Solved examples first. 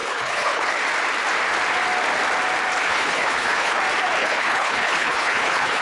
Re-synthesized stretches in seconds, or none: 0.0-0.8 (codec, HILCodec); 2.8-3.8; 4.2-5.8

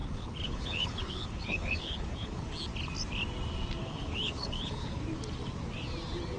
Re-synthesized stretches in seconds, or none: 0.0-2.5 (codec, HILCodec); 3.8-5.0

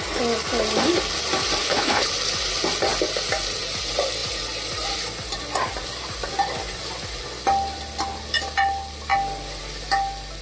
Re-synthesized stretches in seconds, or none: 1.6-2.1 (codec, HILCodec)

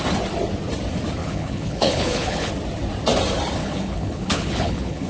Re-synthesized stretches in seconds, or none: 1.2-2.5 (codec, HILCodec); 3.6-5.1

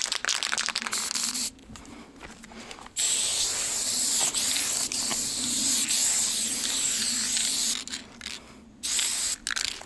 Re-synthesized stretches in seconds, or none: none

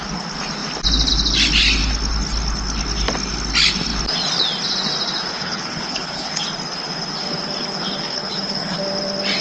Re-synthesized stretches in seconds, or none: 5.3-6.4 (codec, HILCodec); 8.1-8.8

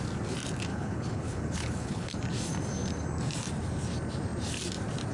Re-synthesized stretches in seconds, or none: 0.7-2.2 (codec, HILCodec)

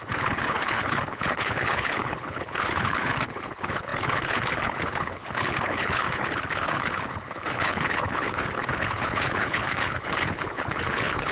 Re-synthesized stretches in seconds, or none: 0.0-11.3 (codec, HILCodec)